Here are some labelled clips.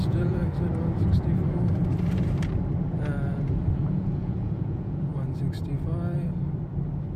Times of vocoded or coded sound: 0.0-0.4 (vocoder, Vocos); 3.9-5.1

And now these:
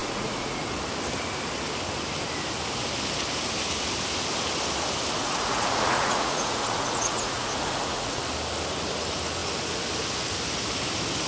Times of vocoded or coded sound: 0.0-0.6 (vocoder, Vocos); 5.2-8.2